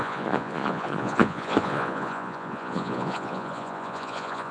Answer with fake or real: fake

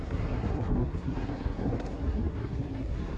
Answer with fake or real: fake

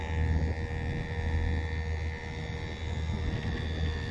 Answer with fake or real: real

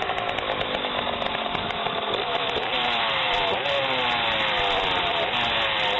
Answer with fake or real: fake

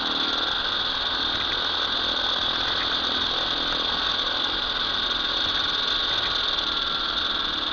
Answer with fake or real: real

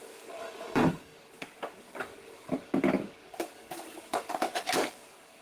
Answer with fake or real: fake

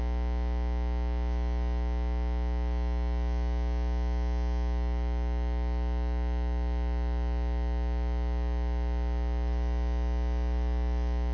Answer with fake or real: real